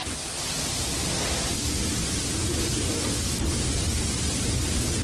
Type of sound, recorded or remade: recorded